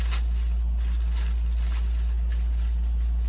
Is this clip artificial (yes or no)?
no